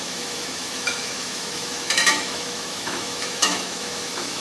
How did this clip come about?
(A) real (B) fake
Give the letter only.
B